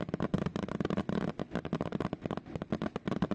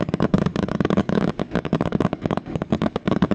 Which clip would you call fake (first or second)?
second